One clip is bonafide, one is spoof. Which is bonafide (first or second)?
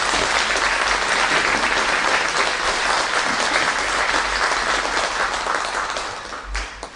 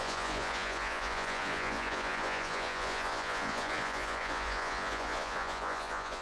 first